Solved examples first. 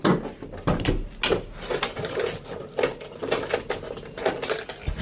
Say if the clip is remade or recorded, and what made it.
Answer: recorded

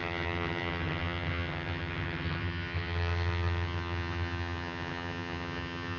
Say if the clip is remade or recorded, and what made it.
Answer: remade, vocoder, HiFi-GAN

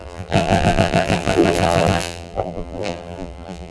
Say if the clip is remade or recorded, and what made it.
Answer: remade, vocoder, BigVGAN v2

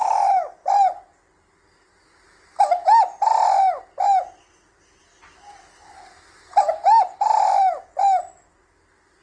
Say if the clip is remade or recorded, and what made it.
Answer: recorded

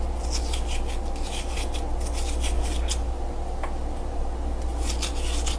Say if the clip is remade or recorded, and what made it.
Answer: recorded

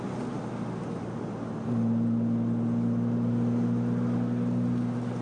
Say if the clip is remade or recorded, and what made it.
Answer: recorded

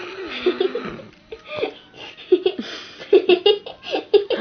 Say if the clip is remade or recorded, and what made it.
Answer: recorded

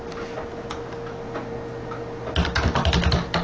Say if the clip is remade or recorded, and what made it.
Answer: recorded